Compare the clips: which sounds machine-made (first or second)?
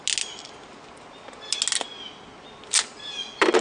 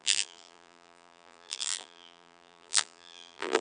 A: second